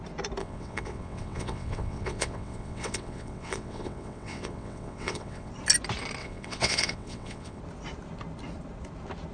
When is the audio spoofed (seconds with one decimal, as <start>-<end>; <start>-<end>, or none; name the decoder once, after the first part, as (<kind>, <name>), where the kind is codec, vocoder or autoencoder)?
0.4-5.5 (vocoder, WaveNeXt); 6.2-7.6